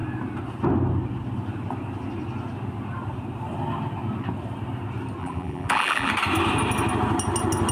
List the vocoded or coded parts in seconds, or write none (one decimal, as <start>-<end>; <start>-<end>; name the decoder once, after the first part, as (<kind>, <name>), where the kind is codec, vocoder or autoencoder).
5.2-6.1 (vocoder, BigVGAN v2)